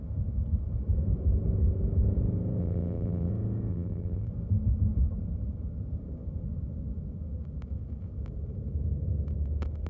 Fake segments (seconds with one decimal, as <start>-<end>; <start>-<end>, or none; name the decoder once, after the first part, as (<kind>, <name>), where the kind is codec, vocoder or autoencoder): 2.6-3.3 (vocoder, BigVGAN v2); 3.7-4.3

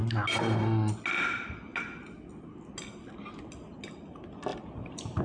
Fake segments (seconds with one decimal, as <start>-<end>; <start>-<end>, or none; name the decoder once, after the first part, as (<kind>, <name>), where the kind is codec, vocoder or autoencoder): 4.5-5.2 (vocoder, BigVGAN v2)

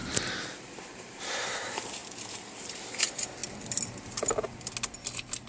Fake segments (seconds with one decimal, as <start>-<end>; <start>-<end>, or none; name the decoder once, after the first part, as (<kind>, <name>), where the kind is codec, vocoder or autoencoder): 0.8-3.4 (vocoder, BigVGAN v2)

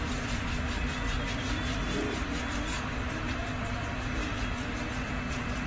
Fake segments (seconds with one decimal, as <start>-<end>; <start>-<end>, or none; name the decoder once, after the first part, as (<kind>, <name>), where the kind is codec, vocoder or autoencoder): 0.0-4.2 (vocoder, BigVGAN v2)

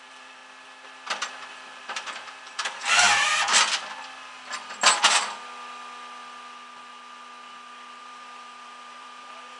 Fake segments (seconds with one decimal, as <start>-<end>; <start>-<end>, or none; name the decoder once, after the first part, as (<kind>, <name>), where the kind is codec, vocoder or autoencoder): 0.0-0.4 (vocoder, BigVGAN v2); 1.8-3.5; 8.0-9.6

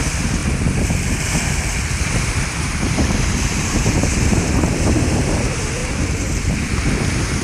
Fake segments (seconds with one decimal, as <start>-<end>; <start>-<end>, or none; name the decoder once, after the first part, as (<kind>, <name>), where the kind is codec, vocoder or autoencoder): 0.0-0.4 (vocoder, BigVGAN v2); 2.2-7.4